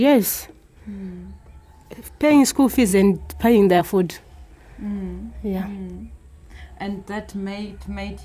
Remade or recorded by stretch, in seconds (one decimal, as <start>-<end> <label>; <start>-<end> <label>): 0.0-2.9 recorded; 2.9-3.8 remade; 3.8-6.5 recorded; 6.5-7.3 remade; 7.3-8.2 recorded